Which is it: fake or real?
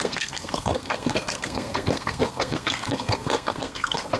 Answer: fake